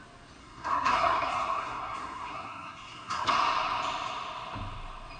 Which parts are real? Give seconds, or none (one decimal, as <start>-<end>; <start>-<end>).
0.0-0.4; 3.3-5.2

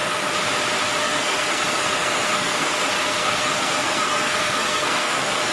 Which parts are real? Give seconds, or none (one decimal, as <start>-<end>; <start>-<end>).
0.0-1.0